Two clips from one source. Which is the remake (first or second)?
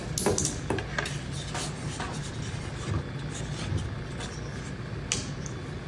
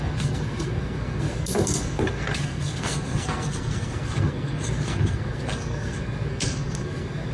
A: second